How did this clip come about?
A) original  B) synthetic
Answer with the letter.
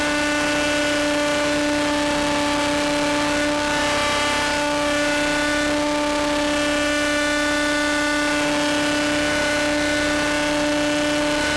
A